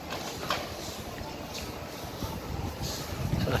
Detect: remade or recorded recorded